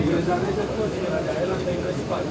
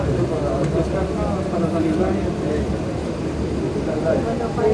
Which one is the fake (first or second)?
first